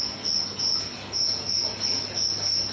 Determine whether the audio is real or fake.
real